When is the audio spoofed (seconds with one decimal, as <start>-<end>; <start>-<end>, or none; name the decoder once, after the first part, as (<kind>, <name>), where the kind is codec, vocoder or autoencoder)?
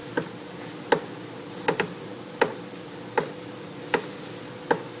none